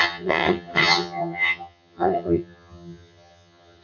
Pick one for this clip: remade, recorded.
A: remade